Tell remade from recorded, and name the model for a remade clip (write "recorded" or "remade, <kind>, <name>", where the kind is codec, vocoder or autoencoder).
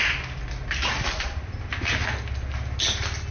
recorded